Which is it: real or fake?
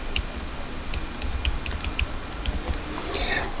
real